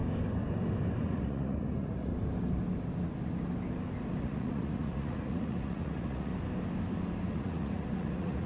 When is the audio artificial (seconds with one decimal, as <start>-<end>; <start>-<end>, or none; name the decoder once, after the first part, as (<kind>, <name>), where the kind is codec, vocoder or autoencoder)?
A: 1.0-2.1 (vocoder, Vocos); 4.2-6.3; 7.3-8.5